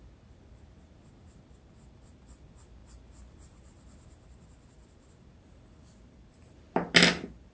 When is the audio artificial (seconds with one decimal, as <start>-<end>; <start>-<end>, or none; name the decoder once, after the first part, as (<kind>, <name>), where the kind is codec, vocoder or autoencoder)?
none